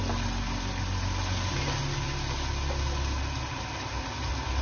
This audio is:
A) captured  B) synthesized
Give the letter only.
A